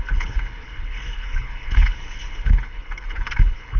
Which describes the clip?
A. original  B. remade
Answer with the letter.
B